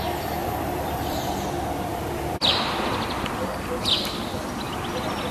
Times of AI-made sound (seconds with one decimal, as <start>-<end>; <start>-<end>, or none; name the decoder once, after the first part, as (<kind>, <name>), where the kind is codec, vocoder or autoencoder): 0.4-3.3 (vocoder, BigVGAN v2)